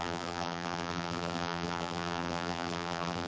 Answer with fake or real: fake